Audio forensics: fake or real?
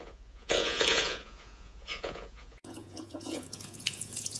fake